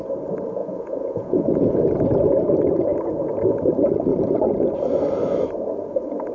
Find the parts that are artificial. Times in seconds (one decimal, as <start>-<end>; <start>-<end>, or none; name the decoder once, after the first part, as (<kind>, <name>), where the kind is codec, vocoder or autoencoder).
0.6-1.9 (vocoder, Vocos)